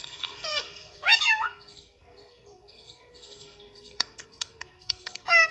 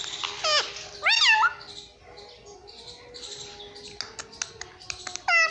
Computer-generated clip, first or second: first